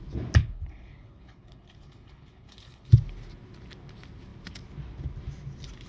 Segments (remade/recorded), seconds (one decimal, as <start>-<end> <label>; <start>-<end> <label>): 0.0-0.4 recorded; 0.4-2.9 remade; 2.9-5.9 recorded